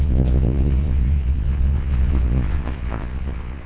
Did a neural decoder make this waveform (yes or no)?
yes